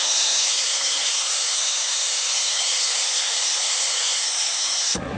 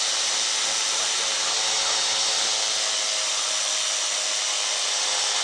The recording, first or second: second